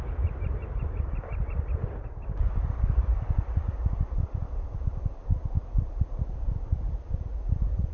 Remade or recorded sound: remade